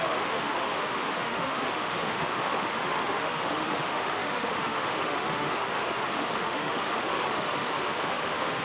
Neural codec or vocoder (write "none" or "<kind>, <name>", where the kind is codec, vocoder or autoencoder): autoencoder, DAC-VAE